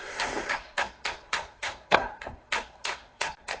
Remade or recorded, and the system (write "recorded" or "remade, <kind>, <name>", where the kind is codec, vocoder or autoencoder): remade, codec, SNAC